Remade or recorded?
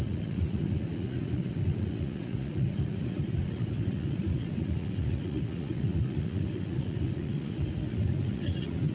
remade